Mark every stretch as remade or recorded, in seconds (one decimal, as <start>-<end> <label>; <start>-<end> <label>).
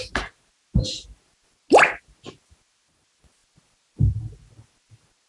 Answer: 0.0-5.3 recorded